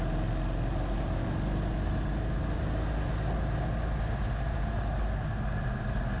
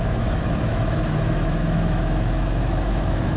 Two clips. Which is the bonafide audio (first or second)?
first